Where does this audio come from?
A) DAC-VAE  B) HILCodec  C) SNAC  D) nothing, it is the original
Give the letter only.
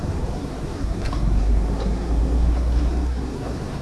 C